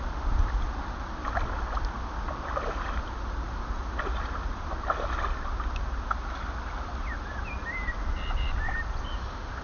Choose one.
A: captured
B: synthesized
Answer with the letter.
A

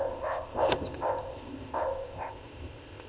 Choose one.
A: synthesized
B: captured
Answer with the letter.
A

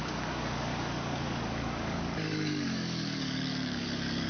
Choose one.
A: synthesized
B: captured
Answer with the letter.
A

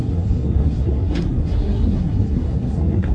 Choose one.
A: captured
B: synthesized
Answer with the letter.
B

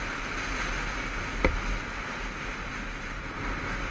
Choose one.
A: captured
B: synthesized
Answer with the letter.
A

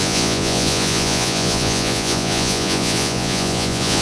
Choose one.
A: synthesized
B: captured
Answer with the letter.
A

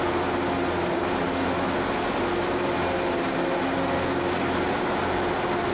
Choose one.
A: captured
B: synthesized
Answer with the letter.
A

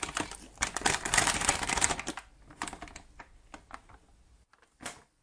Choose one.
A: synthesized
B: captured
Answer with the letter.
B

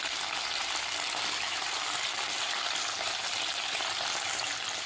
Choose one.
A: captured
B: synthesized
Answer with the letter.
A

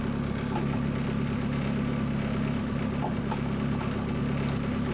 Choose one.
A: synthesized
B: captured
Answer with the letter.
B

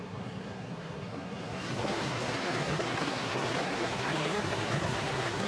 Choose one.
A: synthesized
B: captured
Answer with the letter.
A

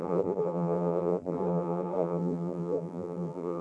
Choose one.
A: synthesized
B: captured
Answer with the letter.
A